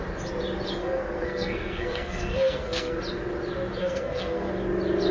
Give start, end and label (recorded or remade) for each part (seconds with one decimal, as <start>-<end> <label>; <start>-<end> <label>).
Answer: 0.0-0.8 recorded; 0.8-3.0 remade; 3.0-3.8 recorded; 3.8-4.5 remade; 4.5-5.1 recorded